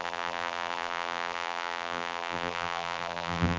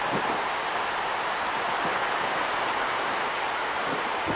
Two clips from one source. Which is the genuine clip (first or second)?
second